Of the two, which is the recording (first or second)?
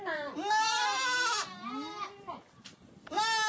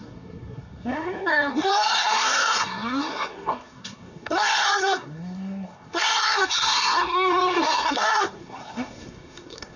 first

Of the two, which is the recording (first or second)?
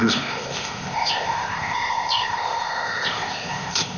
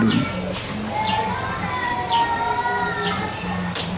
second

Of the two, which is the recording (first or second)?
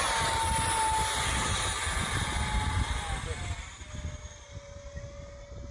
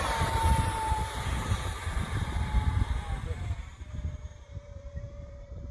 first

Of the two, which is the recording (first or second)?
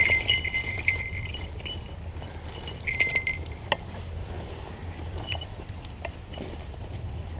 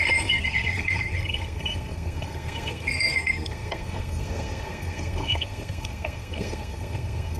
first